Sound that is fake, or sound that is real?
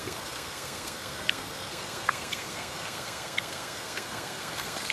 fake